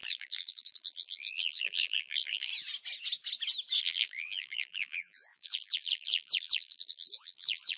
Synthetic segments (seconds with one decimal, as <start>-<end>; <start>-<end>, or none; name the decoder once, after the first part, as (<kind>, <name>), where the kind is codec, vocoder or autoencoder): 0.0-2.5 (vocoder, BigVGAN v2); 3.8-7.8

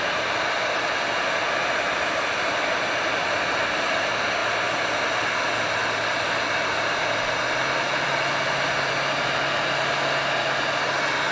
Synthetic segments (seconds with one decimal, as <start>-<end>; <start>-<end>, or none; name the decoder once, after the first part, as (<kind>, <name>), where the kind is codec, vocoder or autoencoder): none

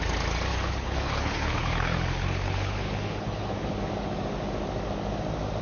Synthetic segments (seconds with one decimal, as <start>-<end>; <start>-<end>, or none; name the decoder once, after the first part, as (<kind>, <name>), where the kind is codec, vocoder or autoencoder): 0.5-3.8 (codec, HILCodec)

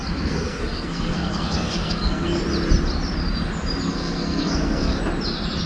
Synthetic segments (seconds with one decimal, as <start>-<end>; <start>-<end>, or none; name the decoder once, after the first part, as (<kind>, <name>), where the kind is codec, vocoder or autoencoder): 0.0-2.4 (codec, SNAC); 3.9-5.0